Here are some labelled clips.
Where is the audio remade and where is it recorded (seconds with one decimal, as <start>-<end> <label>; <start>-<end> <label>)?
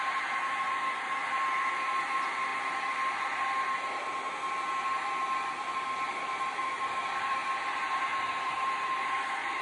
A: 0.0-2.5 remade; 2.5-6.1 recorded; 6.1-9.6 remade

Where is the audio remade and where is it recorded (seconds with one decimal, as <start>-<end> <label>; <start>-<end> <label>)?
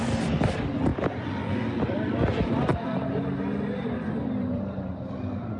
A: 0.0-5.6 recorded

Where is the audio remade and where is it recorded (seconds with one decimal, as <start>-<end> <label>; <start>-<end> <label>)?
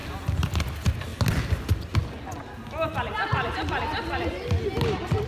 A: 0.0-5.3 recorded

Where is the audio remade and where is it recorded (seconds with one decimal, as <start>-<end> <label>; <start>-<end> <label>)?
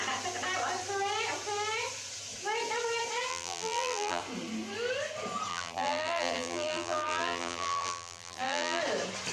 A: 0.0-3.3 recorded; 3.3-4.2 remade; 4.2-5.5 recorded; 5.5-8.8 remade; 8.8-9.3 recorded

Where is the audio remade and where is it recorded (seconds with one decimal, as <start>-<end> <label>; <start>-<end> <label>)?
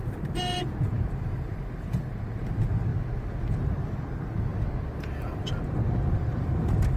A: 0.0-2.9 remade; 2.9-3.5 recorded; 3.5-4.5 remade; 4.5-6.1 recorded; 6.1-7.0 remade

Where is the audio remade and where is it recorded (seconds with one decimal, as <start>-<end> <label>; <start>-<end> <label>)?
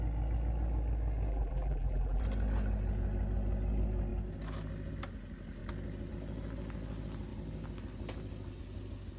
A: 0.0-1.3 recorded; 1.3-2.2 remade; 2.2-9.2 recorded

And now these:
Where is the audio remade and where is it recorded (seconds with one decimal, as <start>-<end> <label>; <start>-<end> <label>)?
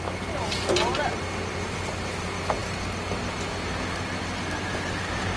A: 0.0-5.4 recorded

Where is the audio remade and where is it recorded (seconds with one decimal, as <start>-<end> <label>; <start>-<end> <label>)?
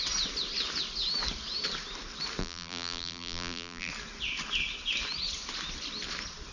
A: 0.0-2.4 recorded; 2.4-3.9 remade; 3.9-6.5 recorded